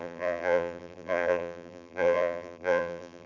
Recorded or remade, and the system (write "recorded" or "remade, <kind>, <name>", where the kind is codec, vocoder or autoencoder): remade, vocoder, BigVGAN v2